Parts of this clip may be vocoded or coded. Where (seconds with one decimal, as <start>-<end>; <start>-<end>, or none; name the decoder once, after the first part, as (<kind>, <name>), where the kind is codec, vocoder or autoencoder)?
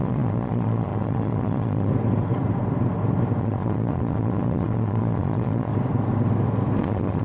0.0-1.9 (vocoder, Vocos); 3.4-5.7; 6.8-7.2